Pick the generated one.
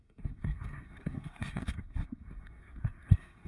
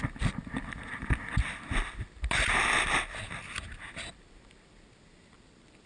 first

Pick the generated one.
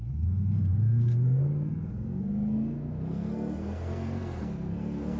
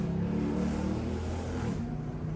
first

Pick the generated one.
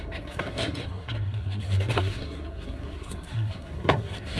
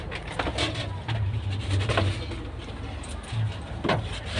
first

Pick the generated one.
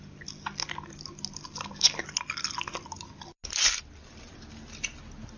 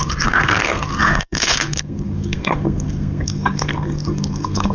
second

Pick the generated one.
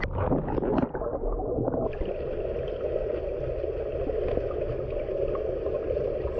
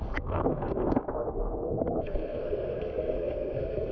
second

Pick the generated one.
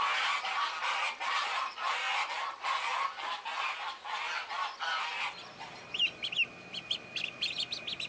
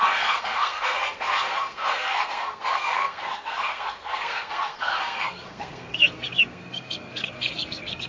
second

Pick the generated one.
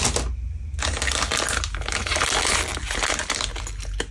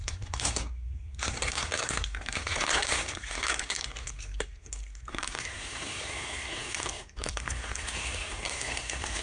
second